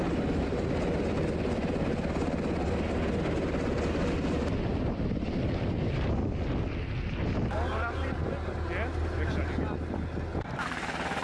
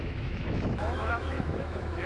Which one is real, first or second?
first